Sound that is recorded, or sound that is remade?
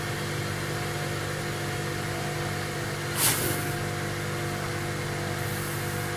recorded